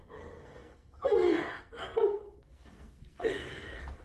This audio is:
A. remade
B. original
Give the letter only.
A